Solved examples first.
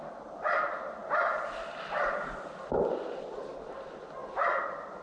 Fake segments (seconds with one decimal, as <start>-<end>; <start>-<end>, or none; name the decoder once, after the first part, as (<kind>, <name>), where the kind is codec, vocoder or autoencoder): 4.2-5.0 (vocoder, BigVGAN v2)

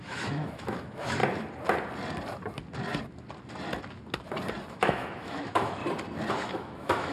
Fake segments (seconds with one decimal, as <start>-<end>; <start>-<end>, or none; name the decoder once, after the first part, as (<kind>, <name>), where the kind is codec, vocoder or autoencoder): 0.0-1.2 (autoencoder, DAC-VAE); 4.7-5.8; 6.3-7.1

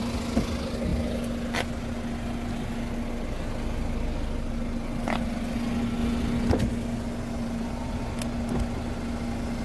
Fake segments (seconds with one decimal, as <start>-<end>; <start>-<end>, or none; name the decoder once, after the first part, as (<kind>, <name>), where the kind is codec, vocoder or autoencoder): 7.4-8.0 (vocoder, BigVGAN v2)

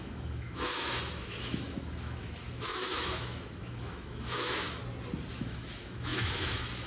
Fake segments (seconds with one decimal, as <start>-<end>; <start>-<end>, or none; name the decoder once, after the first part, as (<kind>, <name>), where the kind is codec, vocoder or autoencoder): 0.0-4.8 (autoencoder, DAC-VAE); 5.3-6.9

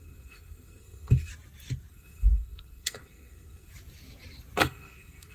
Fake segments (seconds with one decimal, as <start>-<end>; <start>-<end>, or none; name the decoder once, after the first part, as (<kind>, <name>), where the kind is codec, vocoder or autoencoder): 0.0-1.3 (codec, SNAC); 1.9-3.7; 4.6-5.3

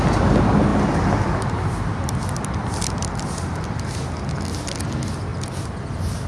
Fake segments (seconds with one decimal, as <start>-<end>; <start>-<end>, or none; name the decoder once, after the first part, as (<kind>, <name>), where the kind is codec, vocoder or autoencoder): none

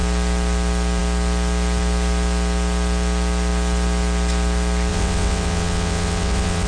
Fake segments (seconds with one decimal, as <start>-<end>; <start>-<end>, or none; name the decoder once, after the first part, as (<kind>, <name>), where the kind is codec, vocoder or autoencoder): 4.9-6.7 (vocoder, WaveNeXt)